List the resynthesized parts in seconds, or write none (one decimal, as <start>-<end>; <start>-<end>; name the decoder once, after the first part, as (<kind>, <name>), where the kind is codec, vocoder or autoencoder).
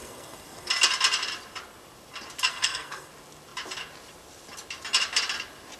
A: 0.0-0.7 (codec, SNAC); 2.5-3.1